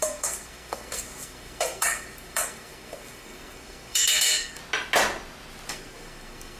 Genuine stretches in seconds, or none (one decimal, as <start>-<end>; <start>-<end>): 4.6-5.7